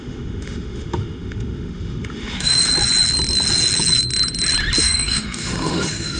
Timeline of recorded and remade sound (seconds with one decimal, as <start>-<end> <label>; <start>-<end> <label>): 0.0-2.6 remade; 2.6-4.8 recorded; 4.8-6.2 remade

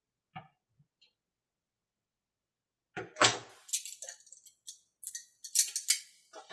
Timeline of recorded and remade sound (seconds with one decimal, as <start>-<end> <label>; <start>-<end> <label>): 0.0-6.5 recorded

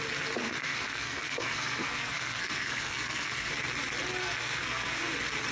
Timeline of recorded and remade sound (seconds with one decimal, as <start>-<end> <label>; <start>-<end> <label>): 0.0-0.4 recorded; 0.4-3.5 remade; 3.5-4.2 recorded; 4.2-5.1 remade; 5.1-5.5 recorded

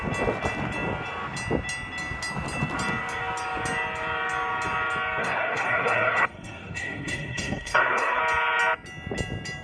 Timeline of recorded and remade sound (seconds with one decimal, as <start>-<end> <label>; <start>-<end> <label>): 0.0-5.2 recorded; 5.2-8.2 remade; 8.2-9.6 recorded

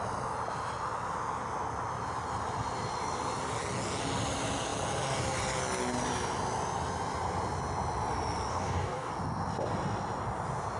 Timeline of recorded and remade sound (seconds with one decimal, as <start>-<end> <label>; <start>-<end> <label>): 0.0-8.5 recorded; 8.5-9.1 remade; 9.1-10.8 recorded

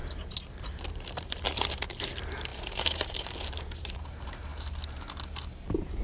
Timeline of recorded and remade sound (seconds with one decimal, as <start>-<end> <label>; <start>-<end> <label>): 0.0-0.9 recorded; 0.9-4.5 remade; 4.5-6.0 recorded

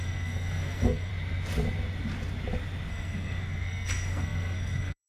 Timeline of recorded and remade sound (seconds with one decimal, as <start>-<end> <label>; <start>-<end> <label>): 0.0-1.1 remade; 1.1-2.9 recorded; 2.9-5.1 remade